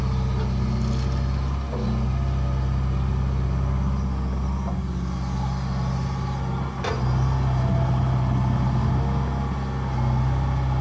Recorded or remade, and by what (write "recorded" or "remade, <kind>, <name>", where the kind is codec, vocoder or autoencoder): recorded